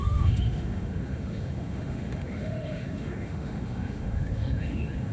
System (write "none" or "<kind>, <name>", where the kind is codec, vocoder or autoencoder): autoencoder, DAC-VAE